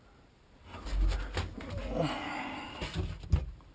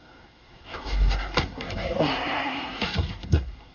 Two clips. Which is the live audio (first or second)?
first